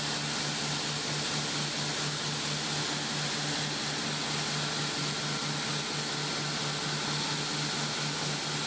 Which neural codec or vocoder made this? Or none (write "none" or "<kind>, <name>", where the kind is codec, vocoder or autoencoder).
none